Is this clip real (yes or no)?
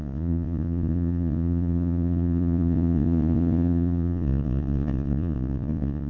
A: no